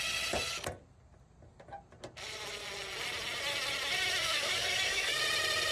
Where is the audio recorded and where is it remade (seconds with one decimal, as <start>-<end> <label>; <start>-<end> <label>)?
0.0-4.2 recorded; 4.2-5.2 remade; 5.2-5.7 recorded